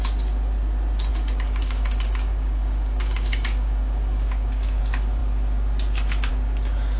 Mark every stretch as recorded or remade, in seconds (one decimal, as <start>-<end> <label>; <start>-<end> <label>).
0.0-1.1 recorded; 1.1-4.8 remade; 4.8-7.0 recorded

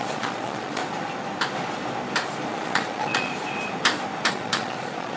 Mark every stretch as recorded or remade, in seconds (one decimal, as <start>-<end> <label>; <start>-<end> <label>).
0.0-0.8 remade; 0.8-2.5 recorded; 2.5-3.3 remade; 3.3-4.3 recorded; 4.3-5.2 remade